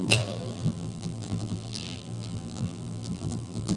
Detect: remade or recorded remade